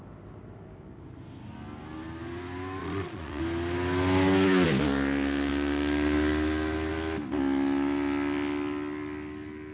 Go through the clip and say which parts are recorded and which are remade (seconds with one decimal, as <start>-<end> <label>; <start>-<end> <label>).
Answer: 0.0-2.8 recorded; 2.8-3.4 remade; 3.4-9.7 recorded